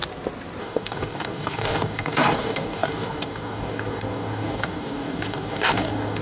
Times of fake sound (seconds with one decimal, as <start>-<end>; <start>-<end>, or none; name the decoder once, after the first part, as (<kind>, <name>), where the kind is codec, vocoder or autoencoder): 0.6-6.2 (codec, DAC)